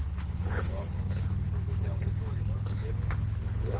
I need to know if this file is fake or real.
fake